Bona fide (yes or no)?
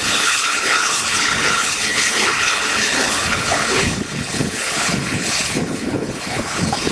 no